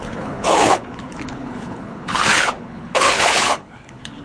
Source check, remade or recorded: remade